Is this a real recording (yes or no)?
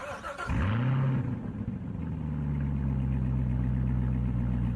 yes